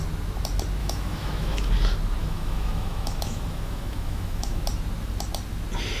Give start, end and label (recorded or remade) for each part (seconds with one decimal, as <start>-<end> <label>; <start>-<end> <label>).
0.0-0.8 recorded; 0.8-1.7 remade; 1.7-2.2 recorded; 2.2-4.6 remade; 4.6-6.0 recorded